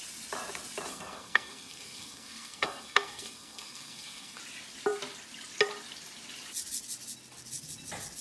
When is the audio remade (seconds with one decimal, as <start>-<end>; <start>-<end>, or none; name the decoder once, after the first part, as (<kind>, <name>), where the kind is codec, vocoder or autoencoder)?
0.9-4.4 (codec, SNAC)